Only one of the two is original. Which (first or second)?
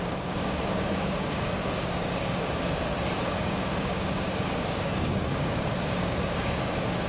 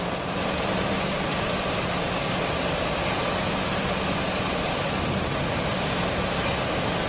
second